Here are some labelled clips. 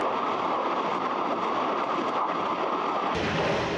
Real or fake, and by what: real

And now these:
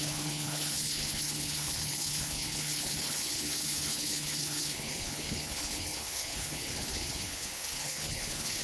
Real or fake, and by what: fake, codec, HILCodec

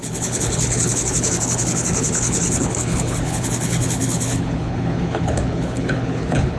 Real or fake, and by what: fake, codec, HILCodec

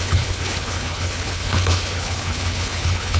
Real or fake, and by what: fake, codec, HILCodec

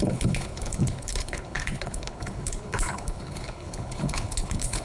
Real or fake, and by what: fake, codec, HILCodec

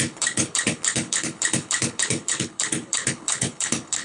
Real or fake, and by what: fake, codec, HILCodec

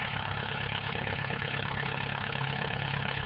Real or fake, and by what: fake, codec, HILCodec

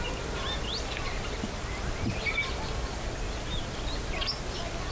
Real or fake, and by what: real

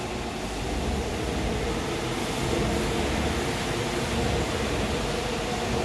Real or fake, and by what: real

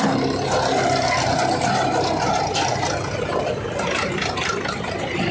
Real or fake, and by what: real